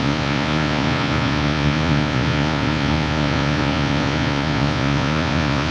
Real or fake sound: fake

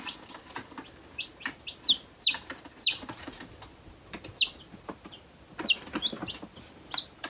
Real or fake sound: real